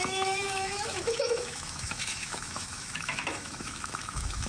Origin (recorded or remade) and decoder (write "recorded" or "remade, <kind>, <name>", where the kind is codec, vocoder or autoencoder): remade, autoencoder, DAC-VAE